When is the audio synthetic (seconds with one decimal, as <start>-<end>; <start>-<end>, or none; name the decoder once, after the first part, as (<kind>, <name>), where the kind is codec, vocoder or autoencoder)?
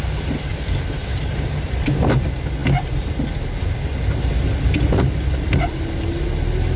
none